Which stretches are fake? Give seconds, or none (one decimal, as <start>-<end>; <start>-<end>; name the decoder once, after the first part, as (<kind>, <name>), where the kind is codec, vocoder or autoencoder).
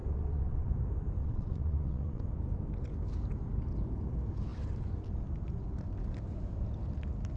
0.0-0.7 (vocoder, WaveNeXt); 1.2-2.2